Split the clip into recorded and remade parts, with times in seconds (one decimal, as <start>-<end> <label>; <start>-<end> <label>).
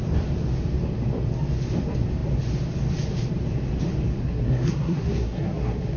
0.0-4.2 recorded; 4.2-6.0 remade